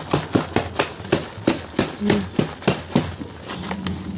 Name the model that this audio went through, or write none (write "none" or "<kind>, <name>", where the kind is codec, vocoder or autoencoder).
none